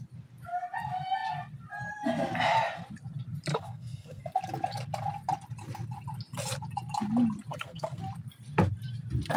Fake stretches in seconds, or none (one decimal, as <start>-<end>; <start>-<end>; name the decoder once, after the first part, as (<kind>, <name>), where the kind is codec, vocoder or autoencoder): 3.5-4.2 (codec, SNAC); 7.5-8.0